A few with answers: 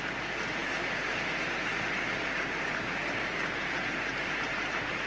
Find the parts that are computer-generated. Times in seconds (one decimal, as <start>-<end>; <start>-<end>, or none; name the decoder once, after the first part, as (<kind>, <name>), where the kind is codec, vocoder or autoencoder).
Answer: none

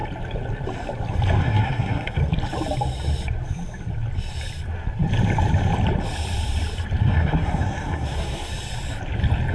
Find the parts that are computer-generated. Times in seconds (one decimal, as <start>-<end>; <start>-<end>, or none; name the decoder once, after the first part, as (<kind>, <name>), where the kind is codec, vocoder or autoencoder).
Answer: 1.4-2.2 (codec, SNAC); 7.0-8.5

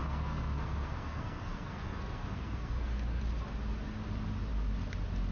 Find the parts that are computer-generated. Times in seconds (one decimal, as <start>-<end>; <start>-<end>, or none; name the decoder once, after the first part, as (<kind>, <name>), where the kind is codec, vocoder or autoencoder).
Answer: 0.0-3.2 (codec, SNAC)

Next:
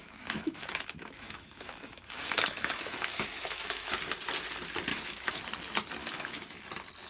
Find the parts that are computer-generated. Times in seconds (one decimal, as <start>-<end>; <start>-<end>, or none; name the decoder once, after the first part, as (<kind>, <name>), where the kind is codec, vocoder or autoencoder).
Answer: 0.0-3.9 (autoencoder, DAC-VAE); 4.9-5.4; 6.0-6.6

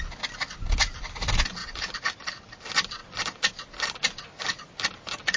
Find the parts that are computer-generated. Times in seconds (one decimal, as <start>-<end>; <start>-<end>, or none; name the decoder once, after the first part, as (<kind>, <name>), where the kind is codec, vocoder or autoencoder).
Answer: none